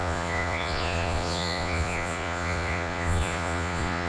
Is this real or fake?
fake